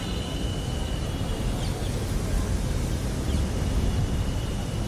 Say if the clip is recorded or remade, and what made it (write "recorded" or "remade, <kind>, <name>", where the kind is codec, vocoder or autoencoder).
recorded